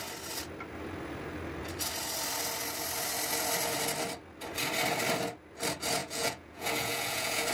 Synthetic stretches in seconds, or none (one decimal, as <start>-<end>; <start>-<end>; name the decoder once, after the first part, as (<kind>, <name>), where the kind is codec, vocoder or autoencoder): 6.0-7.5 (vocoder, Vocos)